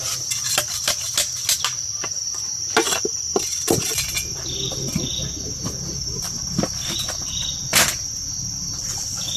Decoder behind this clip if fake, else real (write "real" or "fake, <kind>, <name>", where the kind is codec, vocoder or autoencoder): real